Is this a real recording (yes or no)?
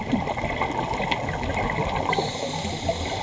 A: yes